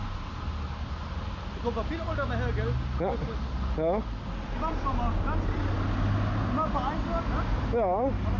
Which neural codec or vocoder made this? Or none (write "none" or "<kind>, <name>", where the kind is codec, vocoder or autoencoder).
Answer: none